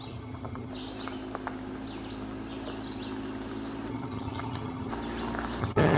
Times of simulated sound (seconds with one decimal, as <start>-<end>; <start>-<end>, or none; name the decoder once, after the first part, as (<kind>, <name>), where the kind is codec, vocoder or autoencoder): 0.0-0.7 (vocoder, HiFi-GAN); 3.9-4.9; 5.6-6.0